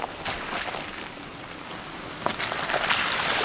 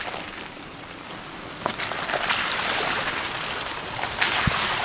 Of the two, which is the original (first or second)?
first